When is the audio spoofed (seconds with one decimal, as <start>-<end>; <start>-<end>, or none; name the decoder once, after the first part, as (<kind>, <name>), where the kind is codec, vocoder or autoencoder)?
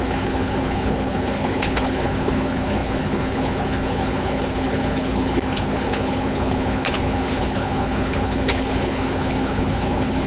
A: 0.0-10.3 (codec, HILCodec)